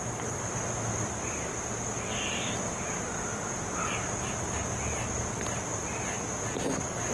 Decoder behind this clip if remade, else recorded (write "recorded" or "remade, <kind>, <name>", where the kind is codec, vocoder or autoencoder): recorded